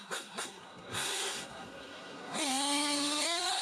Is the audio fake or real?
fake